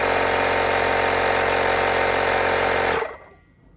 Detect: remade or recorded recorded